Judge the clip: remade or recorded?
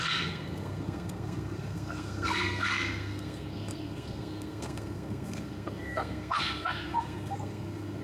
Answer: remade